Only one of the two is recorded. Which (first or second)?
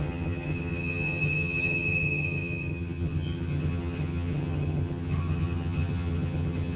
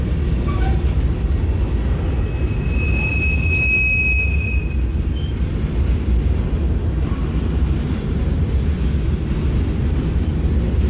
second